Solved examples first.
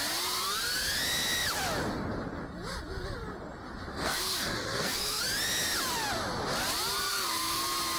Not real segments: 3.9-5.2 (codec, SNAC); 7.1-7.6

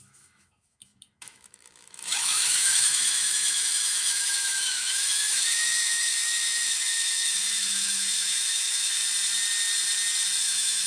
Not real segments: 0.0-9.0 (autoencoder, DAC-VAE); 10.4-10.9

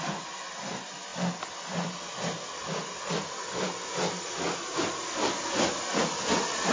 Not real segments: none

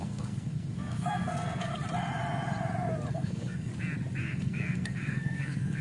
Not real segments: 0.0-1.7 (codec, SNAC); 3.1-3.7; 4.2-5.8

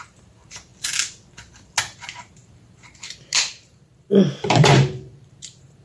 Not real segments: 0.0-0.7 (vocoder, BigVGAN v2); 1.8-5.8

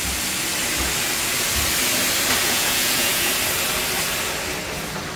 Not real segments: 2.4-3.3 (vocoder, Vocos)

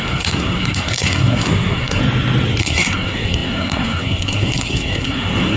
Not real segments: 0.0-2.0 (codec, SNAC); 2.6-5.6